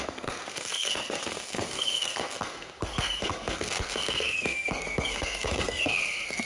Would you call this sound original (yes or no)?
no